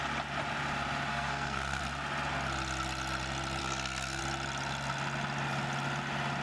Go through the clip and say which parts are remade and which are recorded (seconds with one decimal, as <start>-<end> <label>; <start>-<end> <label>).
0.0-1.1 recorded; 1.1-1.8 remade; 1.8-3.6 recorded; 3.6-4.2 remade; 4.2-6.4 recorded